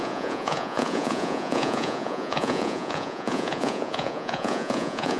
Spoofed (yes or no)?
yes